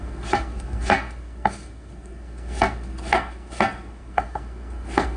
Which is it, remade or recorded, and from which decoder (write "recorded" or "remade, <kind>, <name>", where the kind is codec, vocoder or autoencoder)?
remade, codec, SNAC